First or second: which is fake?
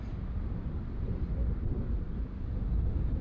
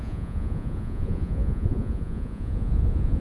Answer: second